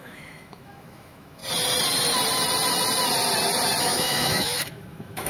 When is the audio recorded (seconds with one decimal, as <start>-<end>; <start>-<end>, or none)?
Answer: 1.4-3.8